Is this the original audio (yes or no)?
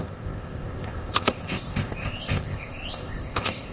no